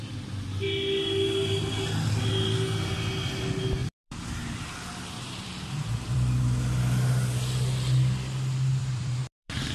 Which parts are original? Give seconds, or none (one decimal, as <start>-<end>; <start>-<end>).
0.0-3.8; 6.4-8.8